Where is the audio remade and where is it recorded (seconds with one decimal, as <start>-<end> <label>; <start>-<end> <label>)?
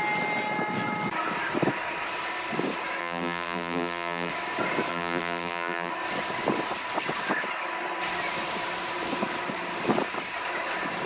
0.0-3.0 recorded; 3.0-4.3 remade; 4.3-4.9 recorded; 4.9-5.9 remade; 5.9-11.1 recorded